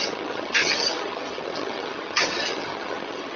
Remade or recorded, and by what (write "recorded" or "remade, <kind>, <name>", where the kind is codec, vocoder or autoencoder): remade, vocoder, HiFi-GAN